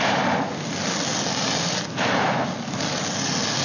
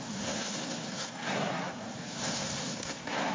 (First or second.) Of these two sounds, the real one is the first